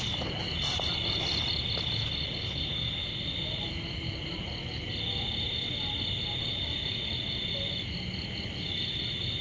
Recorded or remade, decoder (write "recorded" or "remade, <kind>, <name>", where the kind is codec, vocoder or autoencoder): recorded